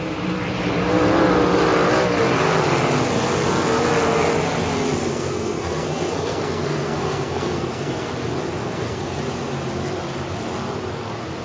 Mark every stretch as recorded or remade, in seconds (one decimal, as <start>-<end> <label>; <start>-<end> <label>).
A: 0.0-5.1 recorded; 5.1-8.1 remade; 8.1-8.6 recorded; 8.6-9.2 remade; 9.2-11.4 recorded